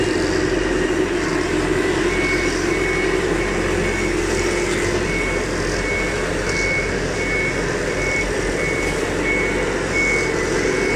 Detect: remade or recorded recorded